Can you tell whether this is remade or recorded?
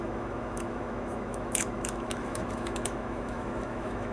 remade